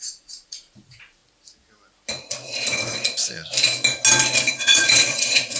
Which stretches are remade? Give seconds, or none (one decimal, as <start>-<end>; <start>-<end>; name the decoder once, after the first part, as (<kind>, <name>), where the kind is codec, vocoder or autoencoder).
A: 0.0-1.2 (vocoder, Vocos); 4.6-5.6